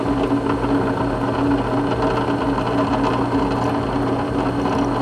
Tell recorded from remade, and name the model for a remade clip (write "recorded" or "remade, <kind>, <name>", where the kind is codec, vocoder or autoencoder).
recorded